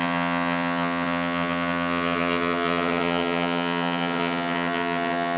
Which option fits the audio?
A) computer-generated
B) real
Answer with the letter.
A